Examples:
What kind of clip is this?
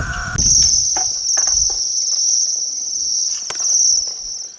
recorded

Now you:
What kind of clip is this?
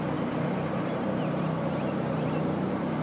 remade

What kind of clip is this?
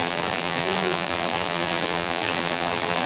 remade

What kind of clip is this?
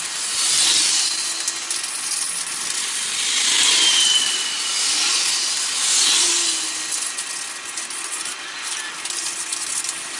recorded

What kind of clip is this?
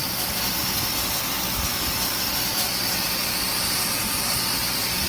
recorded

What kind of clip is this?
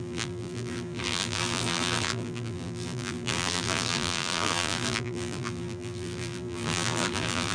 remade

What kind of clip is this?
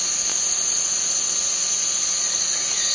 recorded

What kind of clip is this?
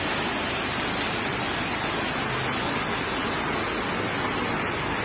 recorded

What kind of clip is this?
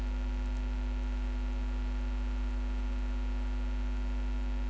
recorded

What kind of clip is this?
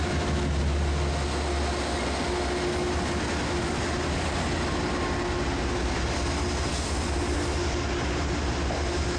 recorded